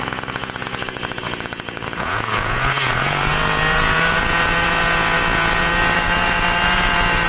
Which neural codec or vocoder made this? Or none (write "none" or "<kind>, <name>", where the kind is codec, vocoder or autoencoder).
vocoder, Vocos